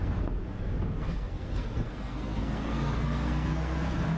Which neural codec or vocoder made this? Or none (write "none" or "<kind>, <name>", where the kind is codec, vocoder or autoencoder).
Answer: codec, SNAC